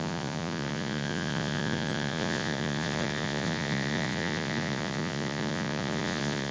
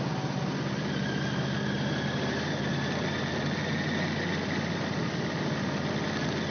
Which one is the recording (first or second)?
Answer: second